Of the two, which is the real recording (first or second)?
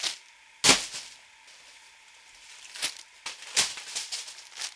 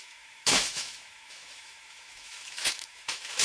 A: first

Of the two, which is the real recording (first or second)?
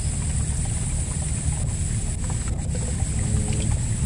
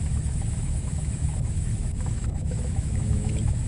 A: first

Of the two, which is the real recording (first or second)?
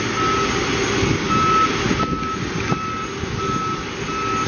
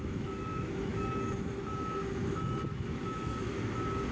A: first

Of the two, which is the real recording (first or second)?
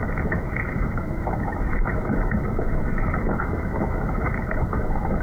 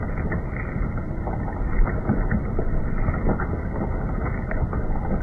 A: second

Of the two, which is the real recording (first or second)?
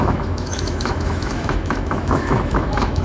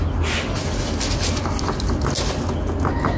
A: second